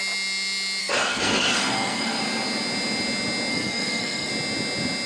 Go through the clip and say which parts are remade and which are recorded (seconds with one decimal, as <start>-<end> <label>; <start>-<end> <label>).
0.0-0.8 recorded; 0.8-2.2 remade; 2.2-3.5 recorded; 3.5-4.3 remade; 4.3-5.1 recorded